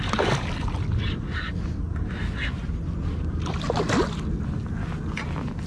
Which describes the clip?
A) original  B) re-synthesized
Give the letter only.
A